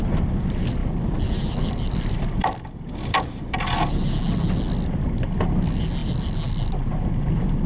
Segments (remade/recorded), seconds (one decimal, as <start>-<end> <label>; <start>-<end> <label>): 0.0-7.7 recorded